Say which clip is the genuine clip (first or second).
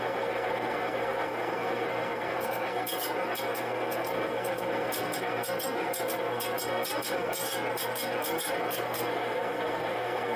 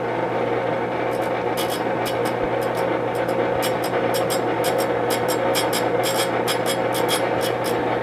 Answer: second